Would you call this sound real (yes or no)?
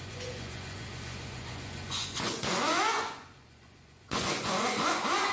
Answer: no